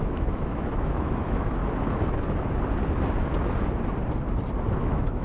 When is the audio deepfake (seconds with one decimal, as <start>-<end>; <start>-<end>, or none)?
0.0-1.6; 4.7-5.2